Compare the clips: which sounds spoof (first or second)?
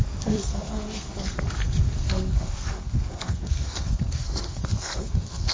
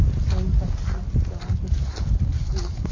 first